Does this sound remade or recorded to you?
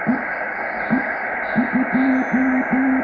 recorded